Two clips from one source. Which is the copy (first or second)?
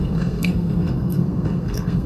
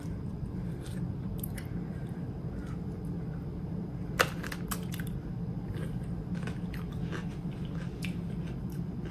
first